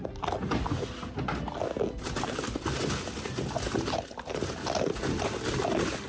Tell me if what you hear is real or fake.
real